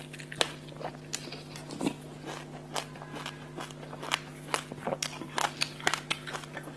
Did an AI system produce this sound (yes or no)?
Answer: no